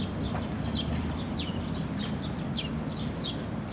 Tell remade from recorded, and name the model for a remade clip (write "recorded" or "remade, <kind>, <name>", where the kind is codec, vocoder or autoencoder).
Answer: recorded